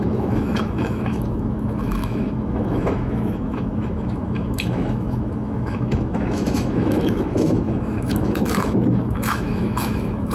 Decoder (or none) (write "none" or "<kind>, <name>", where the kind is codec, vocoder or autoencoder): autoencoder, DAC-VAE